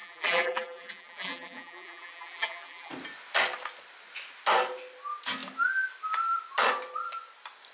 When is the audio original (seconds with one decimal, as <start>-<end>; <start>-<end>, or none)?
2.9-7.7